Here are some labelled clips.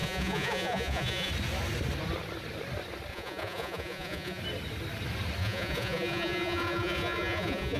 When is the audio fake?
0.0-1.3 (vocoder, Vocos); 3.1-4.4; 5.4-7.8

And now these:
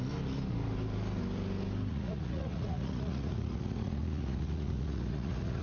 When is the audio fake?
1.9-5.6 (vocoder, Vocos)

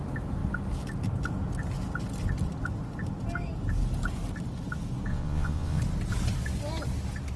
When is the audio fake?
5.1-5.8 (vocoder, Vocos)

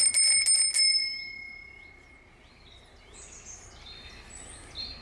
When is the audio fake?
none

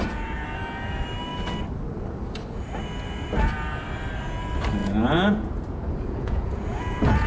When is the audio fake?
4.8-7.3 (vocoder, Vocos)

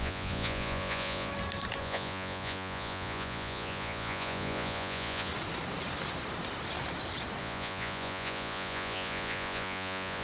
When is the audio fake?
0.0-1.3 (vocoder, Vocos); 1.8-5.3; 7.4-10.2

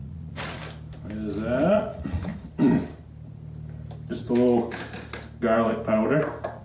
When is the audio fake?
0.0-0.6 (vocoder, Vocos); 1.7-2.3